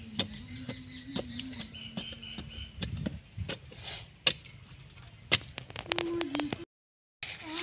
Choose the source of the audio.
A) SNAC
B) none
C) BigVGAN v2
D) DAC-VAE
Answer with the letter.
B